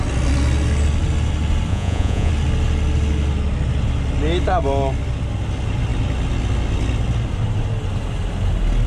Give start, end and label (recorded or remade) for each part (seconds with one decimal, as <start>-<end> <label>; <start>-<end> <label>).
0.0-1.7 recorded; 1.7-2.3 remade; 2.3-8.9 recorded